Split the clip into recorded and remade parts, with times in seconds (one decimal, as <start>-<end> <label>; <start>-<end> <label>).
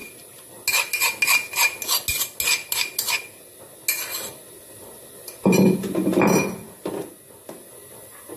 0.0-8.4 recorded